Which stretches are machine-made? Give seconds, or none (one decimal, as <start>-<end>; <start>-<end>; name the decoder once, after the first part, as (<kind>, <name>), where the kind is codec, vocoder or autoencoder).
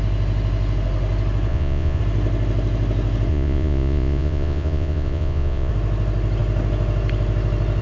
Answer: 1.5-2.0 (vocoder, Vocos); 3.3-5.7